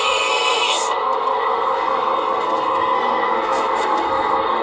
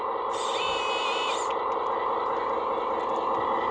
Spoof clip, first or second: first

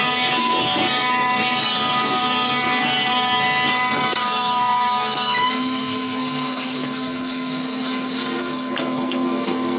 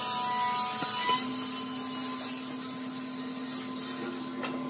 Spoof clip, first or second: first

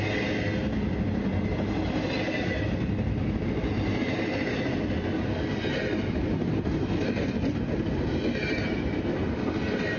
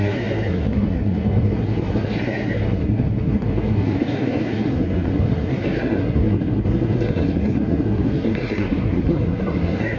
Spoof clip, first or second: second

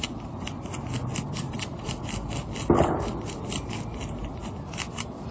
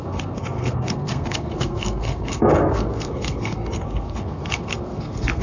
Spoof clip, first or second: second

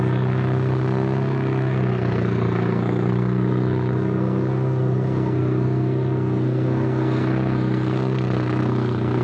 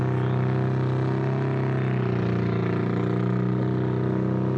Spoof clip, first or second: first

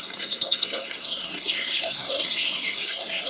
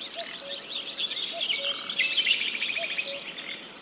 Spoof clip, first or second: first